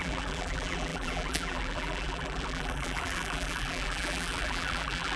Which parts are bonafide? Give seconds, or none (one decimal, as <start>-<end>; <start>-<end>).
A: none